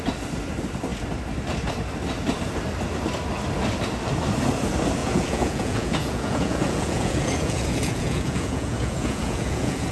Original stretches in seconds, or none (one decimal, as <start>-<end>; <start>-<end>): 0.0-5.0